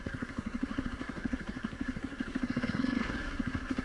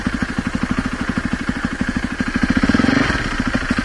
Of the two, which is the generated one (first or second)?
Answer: first